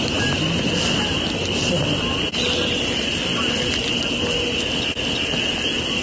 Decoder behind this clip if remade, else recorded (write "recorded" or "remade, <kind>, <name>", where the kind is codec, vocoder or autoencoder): recorded